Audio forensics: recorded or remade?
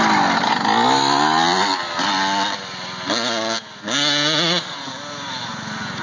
recorded